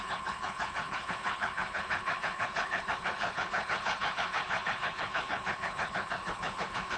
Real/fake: fake